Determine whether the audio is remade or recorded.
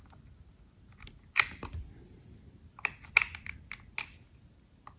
recorded